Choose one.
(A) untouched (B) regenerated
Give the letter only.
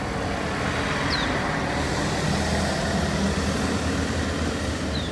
A